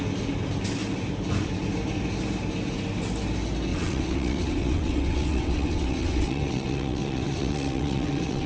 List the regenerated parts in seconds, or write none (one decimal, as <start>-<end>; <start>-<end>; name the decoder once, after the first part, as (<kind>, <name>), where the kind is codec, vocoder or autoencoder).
3.7-8.5 (vocoder, WaveNeXt)